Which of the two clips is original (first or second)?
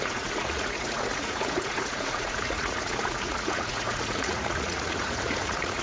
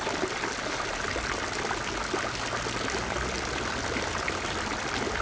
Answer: second